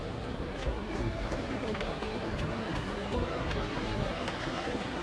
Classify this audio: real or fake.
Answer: fake